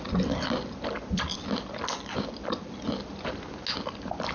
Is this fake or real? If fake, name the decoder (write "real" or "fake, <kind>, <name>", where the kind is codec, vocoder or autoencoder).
real